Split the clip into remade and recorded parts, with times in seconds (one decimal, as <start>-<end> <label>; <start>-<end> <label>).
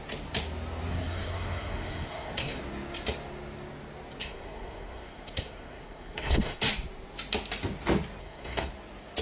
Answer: 0.0-0.9 recorded; 0.9-2.6 remade; 2.6-4.2 recorded; 4.2-6.6 remade; 6.6-8.2 recorded; 8.2-8.7 remade; 8.7-9.2 recorded